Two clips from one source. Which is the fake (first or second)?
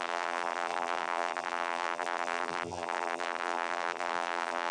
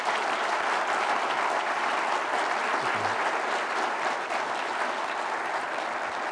first